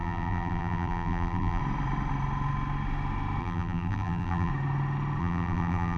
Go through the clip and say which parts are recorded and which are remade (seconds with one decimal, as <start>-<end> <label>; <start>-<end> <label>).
0.0-1.6 remade; 1.6-3.4 recorded; 3.4-4.5 remade; 4.5-5.2 recorded; 5.2-6.0 remade